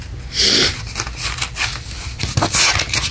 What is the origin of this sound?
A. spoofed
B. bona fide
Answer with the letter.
B